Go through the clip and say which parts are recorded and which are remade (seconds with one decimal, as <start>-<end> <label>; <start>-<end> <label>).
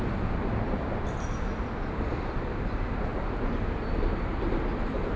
0.0-5.2 recorded